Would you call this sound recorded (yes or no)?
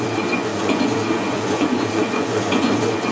no